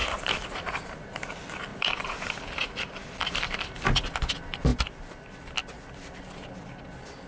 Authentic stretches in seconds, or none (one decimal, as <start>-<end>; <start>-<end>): 1.0-1.7; 3.6-4.7